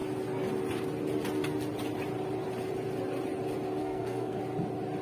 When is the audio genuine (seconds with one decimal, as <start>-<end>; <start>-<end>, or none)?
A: 0.0-3.8; 4.4-5.0